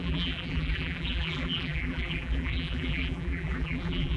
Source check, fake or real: fake